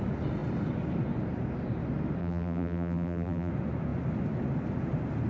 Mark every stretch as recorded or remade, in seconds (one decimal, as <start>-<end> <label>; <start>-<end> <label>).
0.0-2.2 recorded; 2.2-3.5 remade; 3.5-5.3 recorded